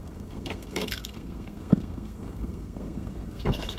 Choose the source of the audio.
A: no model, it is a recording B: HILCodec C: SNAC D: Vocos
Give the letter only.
C